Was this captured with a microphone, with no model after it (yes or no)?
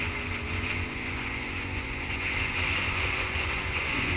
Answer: no